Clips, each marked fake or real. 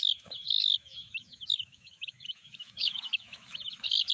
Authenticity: fake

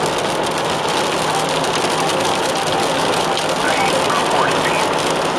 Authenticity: real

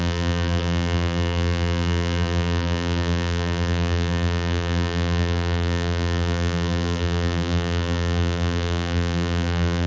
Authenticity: fake